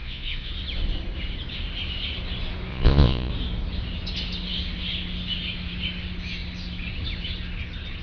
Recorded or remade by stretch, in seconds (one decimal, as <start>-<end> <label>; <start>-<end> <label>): 0.0-0.5 remade; 0.5-2.7 recorded; 2.7-3.3 remade; 3.3-8.0 recorded